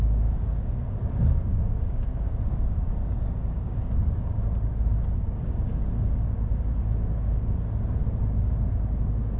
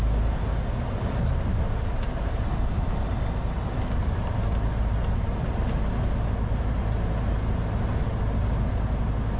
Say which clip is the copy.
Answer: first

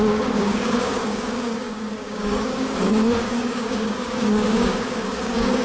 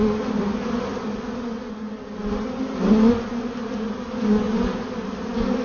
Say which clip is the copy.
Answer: first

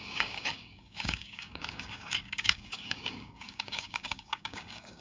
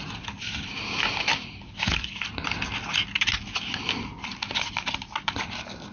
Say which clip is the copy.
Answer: first